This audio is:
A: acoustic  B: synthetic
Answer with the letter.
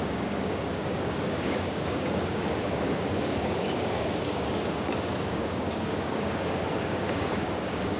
B